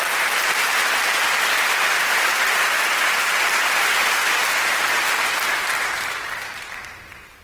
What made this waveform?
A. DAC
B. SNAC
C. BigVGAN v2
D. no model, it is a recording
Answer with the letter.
D